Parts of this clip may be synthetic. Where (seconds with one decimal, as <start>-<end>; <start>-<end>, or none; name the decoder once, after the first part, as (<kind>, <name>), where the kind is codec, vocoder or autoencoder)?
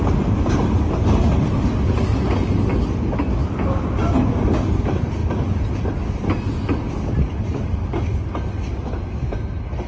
none